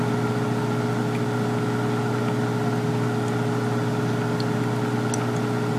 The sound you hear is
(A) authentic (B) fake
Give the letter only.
A